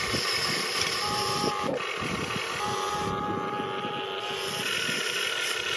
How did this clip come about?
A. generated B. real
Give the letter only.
B